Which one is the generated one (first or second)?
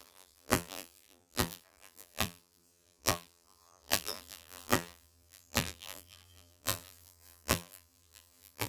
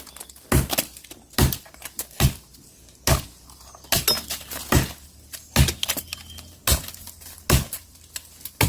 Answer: first